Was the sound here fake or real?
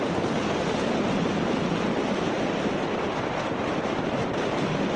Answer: fake